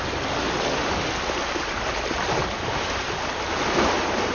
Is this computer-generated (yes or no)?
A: no